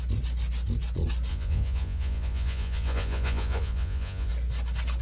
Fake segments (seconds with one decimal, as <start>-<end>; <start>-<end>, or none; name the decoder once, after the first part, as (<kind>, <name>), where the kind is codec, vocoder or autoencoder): 1.3-4.3 (vocoder, Vocos)